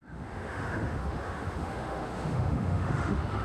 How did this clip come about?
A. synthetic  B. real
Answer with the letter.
A